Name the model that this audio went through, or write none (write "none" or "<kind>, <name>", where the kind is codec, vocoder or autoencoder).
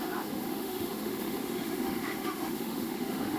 autoencoder, DAC-VAE